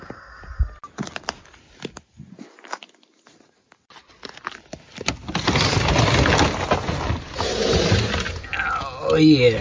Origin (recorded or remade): recorded